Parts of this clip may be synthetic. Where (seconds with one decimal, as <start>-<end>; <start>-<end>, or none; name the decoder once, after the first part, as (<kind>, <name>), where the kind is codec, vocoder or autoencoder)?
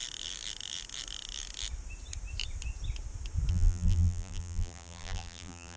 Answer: 3.5-5.8 (vocoder, BigVGAN v2)